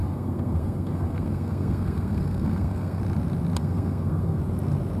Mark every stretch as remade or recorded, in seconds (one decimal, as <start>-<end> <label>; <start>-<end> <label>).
0.0-3.0 remade; 3.0-3.6 recorded; 3.6-4.4 remade; 4.4-5.0 recorded